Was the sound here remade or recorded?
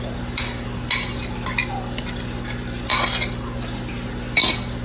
recorded